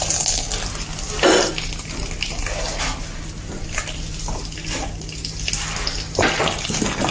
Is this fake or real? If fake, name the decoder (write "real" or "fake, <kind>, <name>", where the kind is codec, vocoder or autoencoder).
real